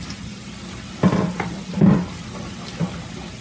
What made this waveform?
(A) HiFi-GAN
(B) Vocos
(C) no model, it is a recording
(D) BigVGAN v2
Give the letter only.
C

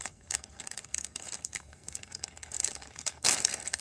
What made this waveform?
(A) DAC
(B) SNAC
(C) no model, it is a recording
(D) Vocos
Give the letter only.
B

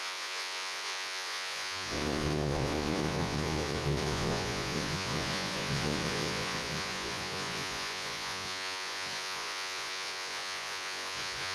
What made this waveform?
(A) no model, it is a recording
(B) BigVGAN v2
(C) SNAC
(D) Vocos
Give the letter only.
D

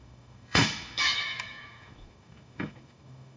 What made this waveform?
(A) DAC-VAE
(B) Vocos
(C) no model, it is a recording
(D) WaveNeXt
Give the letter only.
A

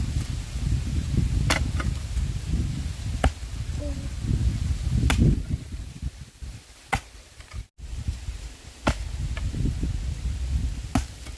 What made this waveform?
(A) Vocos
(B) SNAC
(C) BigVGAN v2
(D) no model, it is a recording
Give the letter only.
D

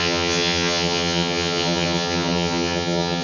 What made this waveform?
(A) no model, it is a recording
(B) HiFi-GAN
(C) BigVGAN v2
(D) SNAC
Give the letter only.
B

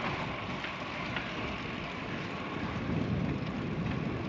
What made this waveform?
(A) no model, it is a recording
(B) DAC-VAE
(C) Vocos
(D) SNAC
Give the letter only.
A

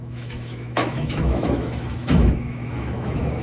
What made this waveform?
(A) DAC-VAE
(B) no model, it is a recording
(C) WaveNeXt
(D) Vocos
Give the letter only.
A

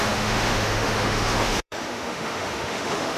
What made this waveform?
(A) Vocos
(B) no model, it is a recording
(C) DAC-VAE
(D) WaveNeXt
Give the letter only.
C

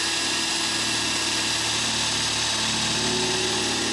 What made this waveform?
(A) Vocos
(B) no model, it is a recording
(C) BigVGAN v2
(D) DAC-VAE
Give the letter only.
B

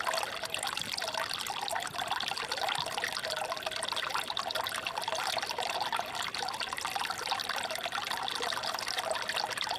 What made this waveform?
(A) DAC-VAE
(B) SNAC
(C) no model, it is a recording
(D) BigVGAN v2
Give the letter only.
C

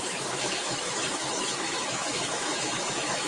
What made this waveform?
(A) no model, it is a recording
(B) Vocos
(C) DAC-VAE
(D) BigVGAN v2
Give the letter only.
C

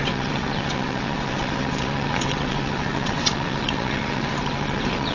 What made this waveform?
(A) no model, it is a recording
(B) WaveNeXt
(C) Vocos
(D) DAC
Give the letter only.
B